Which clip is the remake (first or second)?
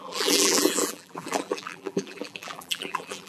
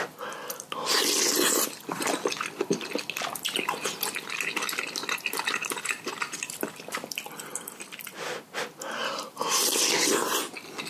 first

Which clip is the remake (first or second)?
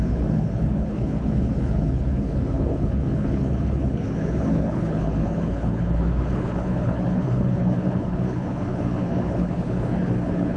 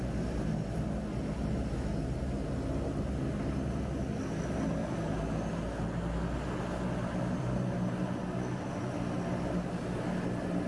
first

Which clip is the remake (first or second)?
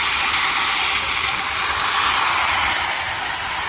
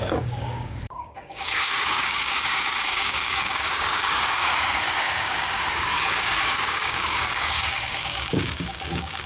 second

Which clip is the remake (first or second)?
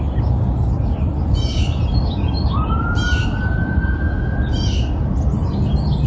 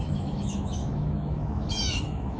second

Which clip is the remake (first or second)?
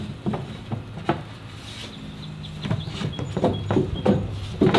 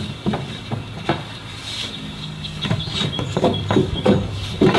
second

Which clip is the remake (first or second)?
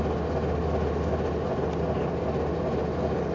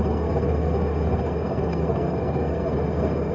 second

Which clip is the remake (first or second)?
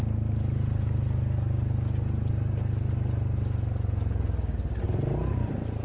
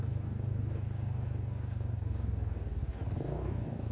second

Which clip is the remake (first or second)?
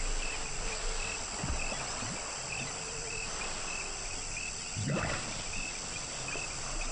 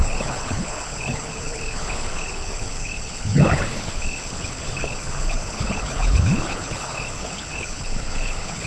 second